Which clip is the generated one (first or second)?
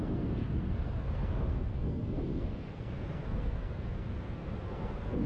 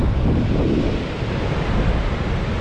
first